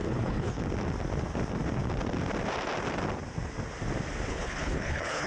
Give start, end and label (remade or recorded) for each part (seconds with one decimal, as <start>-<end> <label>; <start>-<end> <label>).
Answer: 0.0-0.6 remade; 0.6-4.3 recorded; 4.3-5.3 remade